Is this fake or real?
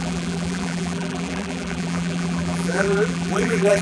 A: fake